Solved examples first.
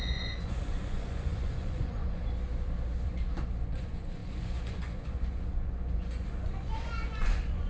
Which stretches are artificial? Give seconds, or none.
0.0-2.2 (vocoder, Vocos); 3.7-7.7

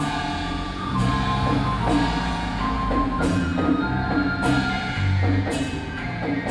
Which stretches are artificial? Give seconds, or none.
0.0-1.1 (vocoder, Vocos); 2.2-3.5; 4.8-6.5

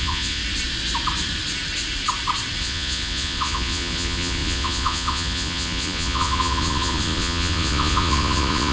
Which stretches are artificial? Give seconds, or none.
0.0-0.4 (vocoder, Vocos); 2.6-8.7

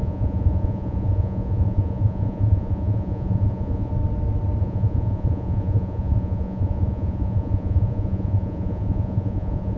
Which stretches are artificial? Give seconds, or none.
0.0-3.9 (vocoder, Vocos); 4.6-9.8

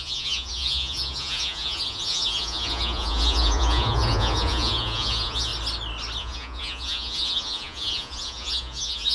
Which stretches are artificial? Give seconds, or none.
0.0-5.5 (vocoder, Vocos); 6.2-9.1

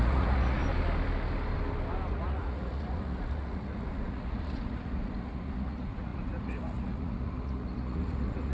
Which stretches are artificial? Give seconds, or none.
0.0-0.6 (vocoder, Vocos); 2.1-8.5

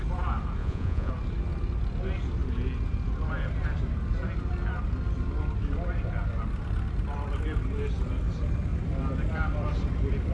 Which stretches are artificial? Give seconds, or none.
0.6-1.1 (vocoder, Vocos)

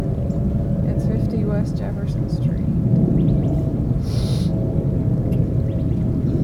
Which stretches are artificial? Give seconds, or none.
none